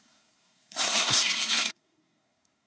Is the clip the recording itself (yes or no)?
no